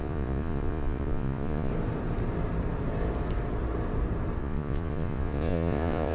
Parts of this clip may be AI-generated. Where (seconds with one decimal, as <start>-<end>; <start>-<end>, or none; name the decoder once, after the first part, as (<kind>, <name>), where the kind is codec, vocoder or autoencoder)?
0.0-1.7 (vocoder, Vocos); 4.4-6.1